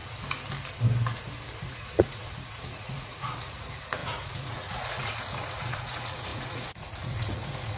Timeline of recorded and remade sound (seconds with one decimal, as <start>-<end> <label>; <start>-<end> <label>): 0.0-1.6 recorded; 1.6-7.8 remade